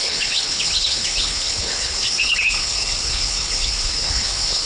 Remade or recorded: remade